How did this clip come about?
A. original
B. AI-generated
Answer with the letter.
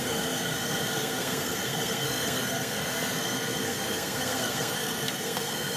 B